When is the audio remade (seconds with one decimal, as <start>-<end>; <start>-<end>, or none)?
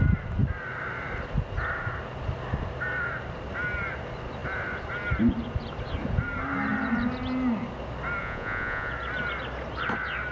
8.2-8.9